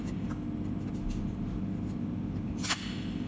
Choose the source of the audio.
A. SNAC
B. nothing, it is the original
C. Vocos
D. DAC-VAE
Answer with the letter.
B